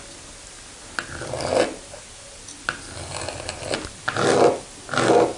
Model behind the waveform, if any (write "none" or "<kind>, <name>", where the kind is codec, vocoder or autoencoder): none